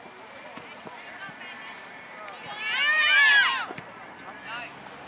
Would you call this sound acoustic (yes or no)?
yes